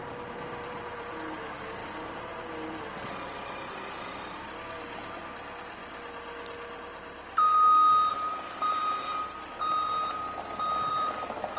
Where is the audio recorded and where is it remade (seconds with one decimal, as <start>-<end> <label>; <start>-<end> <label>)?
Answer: 0.0-5.8 remade; 5.8-8.1 recorded; 8.1-8.8 remade; 8.8-10.9 recorded; 10.9-11.6 remade